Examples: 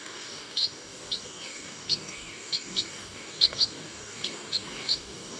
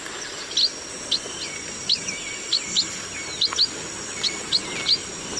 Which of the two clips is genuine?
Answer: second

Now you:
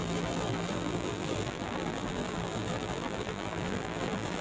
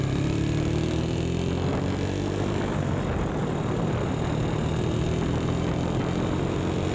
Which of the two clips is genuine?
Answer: second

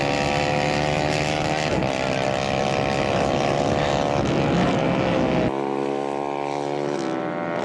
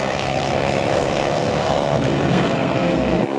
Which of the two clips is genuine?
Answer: first